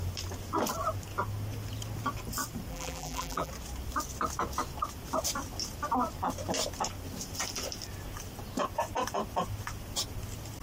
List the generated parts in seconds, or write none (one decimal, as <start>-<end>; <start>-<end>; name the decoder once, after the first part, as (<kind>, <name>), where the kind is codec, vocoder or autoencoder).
2.7-3.5 (vocoder, BigVGAN v2)